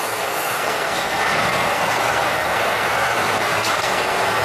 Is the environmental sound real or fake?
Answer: fake